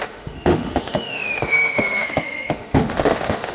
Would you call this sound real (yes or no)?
no